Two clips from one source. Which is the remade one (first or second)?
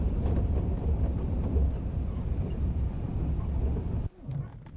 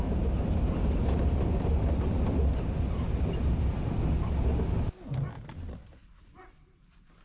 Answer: first